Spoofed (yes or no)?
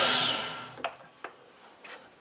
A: no